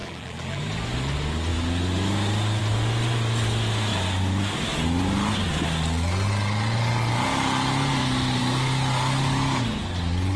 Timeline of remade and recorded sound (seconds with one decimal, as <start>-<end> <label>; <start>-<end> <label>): 0.0-0.6 remade; 0.6-10.4 recorded